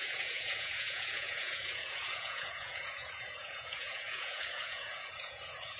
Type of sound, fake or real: fake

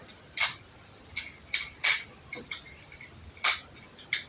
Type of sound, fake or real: real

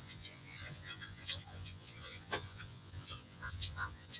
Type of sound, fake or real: fake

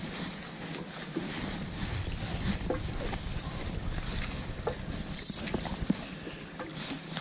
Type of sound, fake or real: real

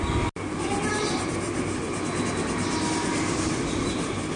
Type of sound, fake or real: real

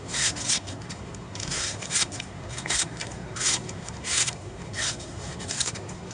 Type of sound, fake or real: fake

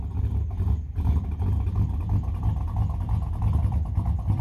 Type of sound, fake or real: real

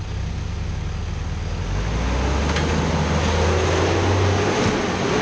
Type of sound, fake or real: real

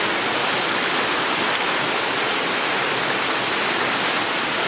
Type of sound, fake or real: real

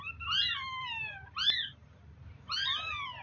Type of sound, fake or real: real